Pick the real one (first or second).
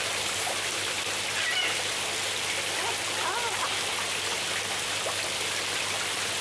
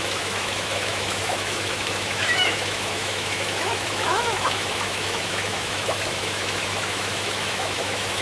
first